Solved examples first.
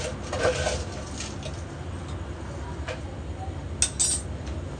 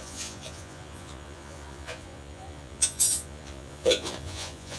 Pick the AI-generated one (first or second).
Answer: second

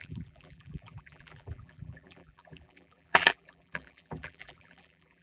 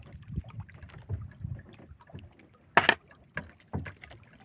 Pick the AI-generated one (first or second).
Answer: first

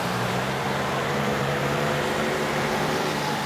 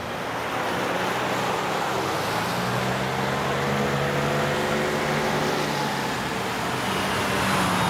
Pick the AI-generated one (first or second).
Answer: first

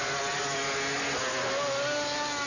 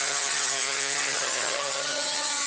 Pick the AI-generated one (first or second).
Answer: second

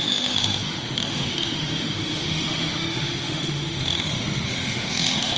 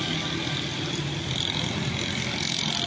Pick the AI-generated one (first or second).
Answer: first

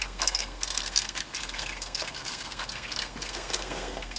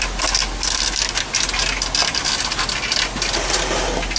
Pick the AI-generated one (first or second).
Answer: first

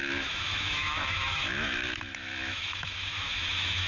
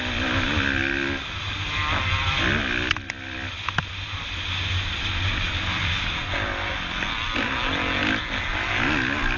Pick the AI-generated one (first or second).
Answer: first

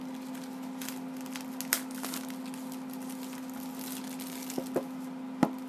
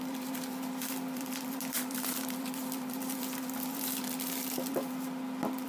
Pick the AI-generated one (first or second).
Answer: second